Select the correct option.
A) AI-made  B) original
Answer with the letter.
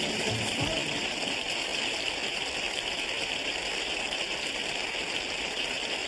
B